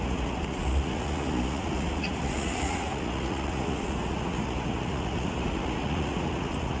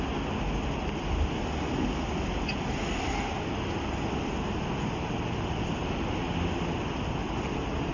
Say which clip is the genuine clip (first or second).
second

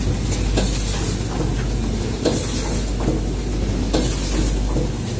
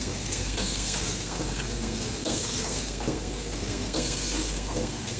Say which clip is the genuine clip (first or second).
first